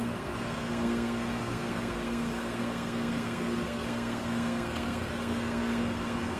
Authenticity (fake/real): fake